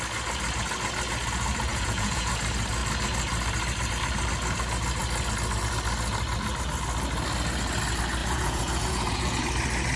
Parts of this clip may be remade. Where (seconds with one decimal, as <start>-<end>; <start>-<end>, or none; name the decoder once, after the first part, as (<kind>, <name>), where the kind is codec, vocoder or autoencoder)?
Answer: 1.7-2.3 (vocoder, Vocos); 8.2-9.4